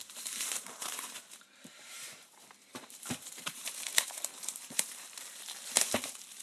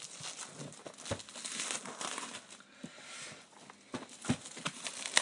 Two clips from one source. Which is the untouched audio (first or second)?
second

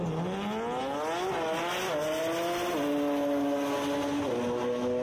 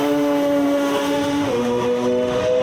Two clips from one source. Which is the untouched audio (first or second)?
first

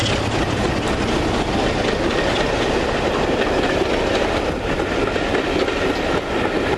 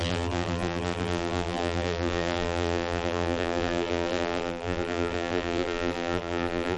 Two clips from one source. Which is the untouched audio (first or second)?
first